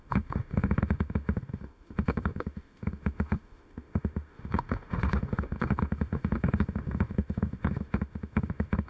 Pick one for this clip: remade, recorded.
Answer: remade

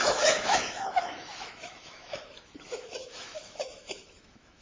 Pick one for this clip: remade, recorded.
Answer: remade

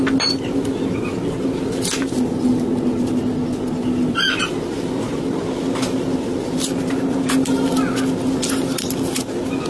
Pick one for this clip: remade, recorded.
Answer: recorded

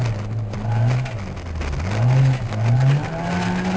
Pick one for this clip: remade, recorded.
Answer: recorded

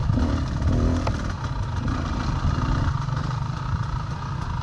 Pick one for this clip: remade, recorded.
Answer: recorded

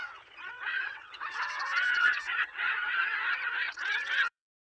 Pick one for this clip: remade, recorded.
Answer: remade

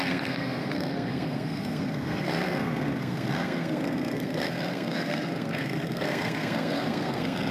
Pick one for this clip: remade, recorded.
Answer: remade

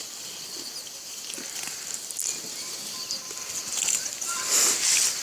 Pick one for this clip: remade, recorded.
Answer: recorded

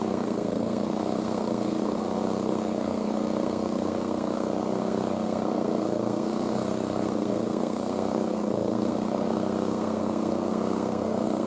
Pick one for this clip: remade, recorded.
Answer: remade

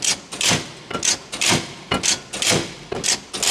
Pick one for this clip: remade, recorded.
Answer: recorded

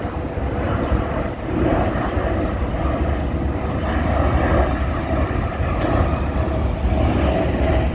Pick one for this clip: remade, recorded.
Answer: recorded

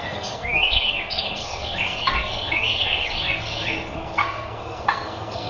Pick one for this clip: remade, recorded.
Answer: remade